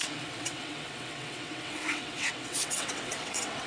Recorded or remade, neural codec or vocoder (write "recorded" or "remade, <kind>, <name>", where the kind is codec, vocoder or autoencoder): remade, vocoder, WaveNeXt